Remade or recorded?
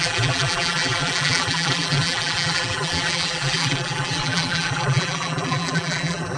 remade